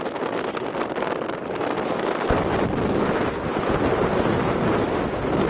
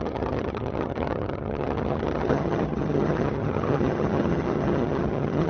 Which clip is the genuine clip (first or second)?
first